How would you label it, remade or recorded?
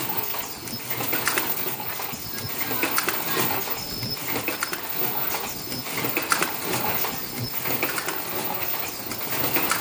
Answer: remade